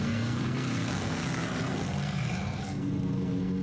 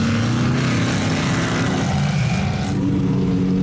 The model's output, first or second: first